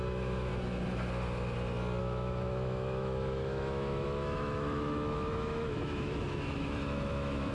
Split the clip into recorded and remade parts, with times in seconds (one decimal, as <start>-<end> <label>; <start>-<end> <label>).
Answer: 0.0-0.5 remade; 0.5-2.0 recorded; 2.0-7.5 remade